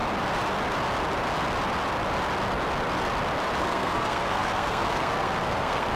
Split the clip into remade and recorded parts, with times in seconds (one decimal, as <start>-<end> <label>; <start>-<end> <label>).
0.0-3.6 recorded; 3.6-6.0 remade

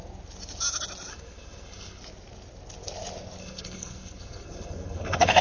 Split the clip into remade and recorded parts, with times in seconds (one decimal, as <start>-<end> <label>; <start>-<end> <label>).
0.0-1.1 recorded; 1.1-2.0 remade; 2.0-3.4 recorded; 3.4-5.4 remade

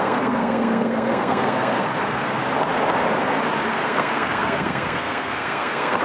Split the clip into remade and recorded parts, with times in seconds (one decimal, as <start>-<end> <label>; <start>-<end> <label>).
0.0-2.4 remade; 2.4-3.7 recorded; 3.7-6.0 remade

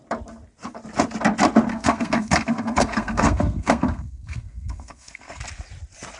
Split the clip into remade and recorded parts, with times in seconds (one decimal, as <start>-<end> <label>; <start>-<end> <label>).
0.0-1.7 recorded; 1.7-5.4 remade; 5.4-6.2 recorded

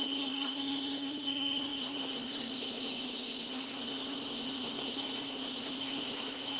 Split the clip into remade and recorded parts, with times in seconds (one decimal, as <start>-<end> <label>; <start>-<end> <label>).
0.0-6.6 remade